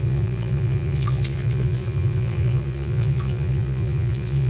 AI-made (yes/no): yes